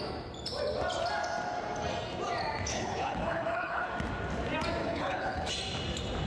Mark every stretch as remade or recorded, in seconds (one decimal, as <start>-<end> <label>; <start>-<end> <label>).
0.0-2.7 recorded; 2.7-3.9 remade; 3.9-4.8 recorded; 4.8-5.5 remade; 5.5-6.3 recorded